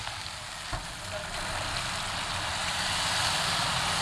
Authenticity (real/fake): real